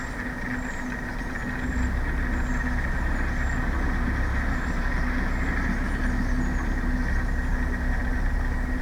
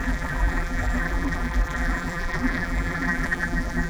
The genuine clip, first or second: first